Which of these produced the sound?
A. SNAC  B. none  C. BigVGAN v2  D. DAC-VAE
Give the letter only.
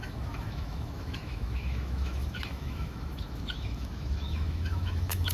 D